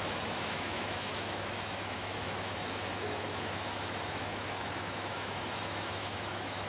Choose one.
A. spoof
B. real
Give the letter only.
A